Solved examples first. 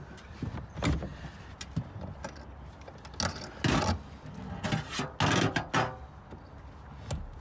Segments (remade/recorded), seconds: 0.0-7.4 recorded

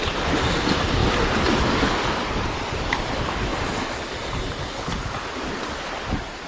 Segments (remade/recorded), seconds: 0.0-1.0 recorded; 1.0-2.8 remade; 2.8-6.5 recorded

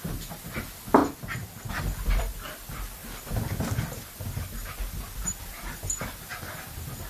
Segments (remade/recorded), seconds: 0.0-1.0 remade; 1.0-1.7 recorded; 1.7-3.0 remade; 3.0-3.6 recorded; 3.6-7.1 remade

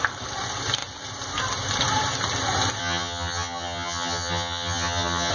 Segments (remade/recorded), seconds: 0.0-2.8 recorded; 2.8-5.3 remade

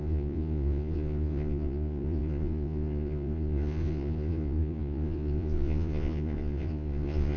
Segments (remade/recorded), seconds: 0.0-7.4 remade

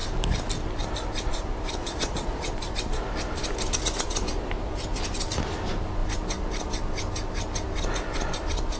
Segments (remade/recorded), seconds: 0.0-1.8 recorded; 1.8-2.5 remade; 2.5-8.8 recorded

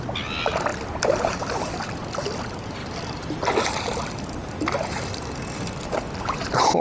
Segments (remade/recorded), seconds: 0.0-6.8 recorded

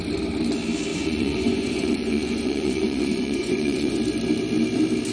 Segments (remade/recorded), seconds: 0.0-0.9 recorded; 0.9-4.0 remade; 4.0-5.1 recorded